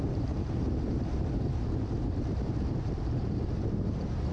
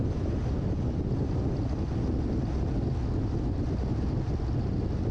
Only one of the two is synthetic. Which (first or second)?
first